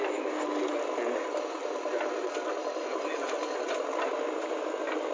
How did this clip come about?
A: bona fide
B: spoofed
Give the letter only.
A